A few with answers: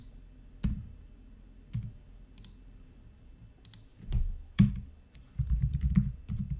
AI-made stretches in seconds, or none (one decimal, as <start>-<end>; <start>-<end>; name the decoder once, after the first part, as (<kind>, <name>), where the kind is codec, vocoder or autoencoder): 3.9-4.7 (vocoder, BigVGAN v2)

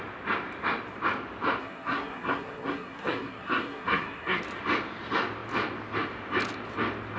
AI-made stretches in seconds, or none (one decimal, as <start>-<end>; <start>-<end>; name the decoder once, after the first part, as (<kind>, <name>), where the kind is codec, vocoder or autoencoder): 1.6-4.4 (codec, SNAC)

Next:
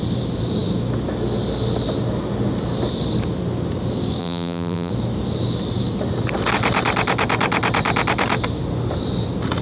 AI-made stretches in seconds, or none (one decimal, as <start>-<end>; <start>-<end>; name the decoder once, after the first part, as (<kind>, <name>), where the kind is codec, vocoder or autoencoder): 4.2-4.9 (vocoder, BigVGAN v2)

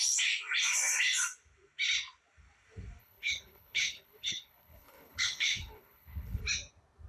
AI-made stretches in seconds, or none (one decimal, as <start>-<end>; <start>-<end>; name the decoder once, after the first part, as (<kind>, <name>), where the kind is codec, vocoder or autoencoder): 3.0-6.4 (codec, HILCodec)

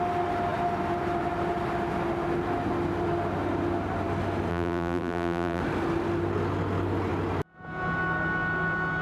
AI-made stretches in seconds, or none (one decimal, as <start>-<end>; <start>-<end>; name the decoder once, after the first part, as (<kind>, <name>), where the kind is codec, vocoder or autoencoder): 4.5-5.6 (vocoder, BigVGAN v2)

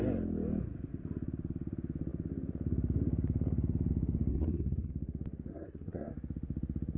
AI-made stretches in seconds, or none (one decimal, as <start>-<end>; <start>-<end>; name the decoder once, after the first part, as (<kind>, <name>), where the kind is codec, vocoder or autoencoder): 4.3-4.9 (codec, SNAC); 5.5-6.1

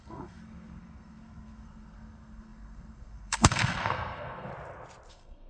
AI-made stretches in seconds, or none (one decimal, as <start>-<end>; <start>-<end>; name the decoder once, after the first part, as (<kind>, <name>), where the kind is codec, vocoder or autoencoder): 0.0-4.5 (codec, SNAC); 5.1-5.5

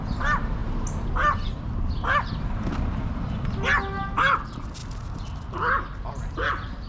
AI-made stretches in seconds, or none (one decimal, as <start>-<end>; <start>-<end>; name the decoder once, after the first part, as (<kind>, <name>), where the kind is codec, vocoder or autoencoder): none